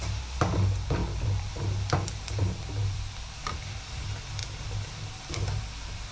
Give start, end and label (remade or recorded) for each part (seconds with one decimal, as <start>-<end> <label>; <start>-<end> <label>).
0.0-1.0 recorded; 1.0-1.5 remade; 1.5-2.8 recorded; 2.8-3.8 remade; 3.8-4.4 recorded; 4.4-5.2 remade; 5.2-6.1 recorded

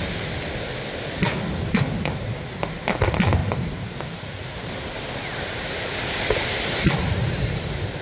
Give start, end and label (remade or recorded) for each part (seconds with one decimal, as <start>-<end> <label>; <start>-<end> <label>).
0.0-3.4 recorded; 3.4-4.7 remade; 4.7-8.0 recorded

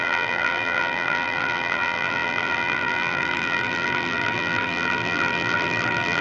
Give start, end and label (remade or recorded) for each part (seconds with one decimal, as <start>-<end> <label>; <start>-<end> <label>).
0.0-6.2 remade

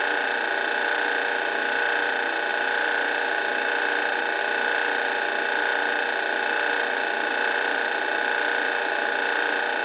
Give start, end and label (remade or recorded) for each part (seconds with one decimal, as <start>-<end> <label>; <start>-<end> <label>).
0.0-7.3 recorded; 7.3-8.2 remade; 8.2-9.8 recorded

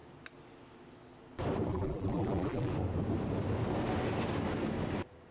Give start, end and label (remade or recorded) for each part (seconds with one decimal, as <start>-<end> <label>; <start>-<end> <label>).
0.0-1.7 recorded; 1.7-2.7 remade; 2.7-5.3 recorded

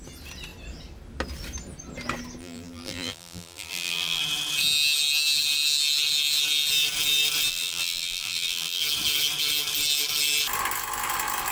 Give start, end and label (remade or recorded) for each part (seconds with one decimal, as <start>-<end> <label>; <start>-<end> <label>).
0.0-2.4 recorded; 2.4-4.2 remade; 4.2-7.5 recorded; 7.5-8.8 remade; 8.8-11.5 recorded

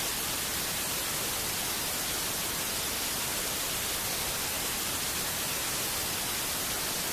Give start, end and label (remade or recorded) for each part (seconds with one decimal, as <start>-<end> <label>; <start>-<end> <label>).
0.0-7.1 recorded